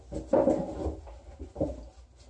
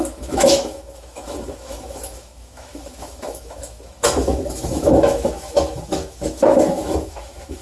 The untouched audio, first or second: first